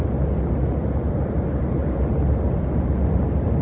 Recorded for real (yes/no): yes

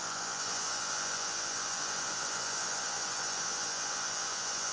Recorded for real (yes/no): no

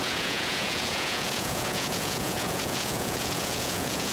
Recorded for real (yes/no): no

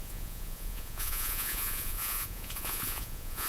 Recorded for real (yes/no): no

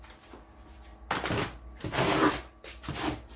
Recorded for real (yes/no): yes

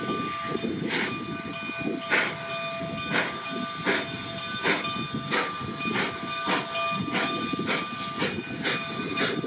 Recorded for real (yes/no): yes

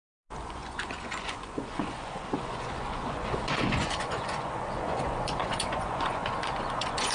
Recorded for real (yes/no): no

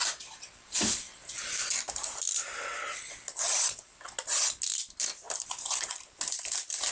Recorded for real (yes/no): yes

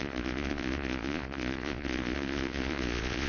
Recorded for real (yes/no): no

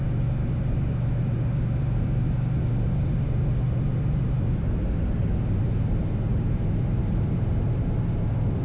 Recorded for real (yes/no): yes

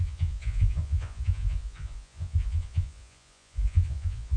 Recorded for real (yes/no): no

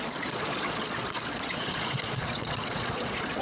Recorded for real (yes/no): no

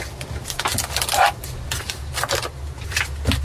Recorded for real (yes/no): yes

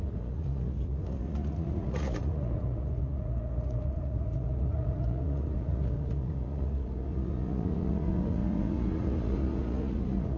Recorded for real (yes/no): no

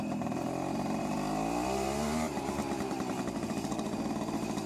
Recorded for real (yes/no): yes